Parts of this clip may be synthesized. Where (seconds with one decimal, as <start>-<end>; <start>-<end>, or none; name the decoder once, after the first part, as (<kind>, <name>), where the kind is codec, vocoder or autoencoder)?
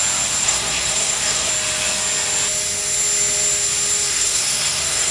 0.4-1.5 (codec, SNAC); 4.1-5.1